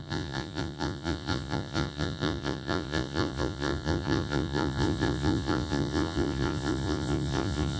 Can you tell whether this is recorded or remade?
remade